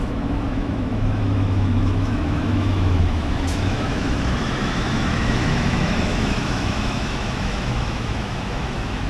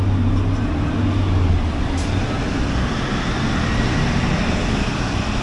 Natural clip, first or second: second